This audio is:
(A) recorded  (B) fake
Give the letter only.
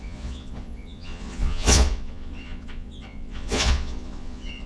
B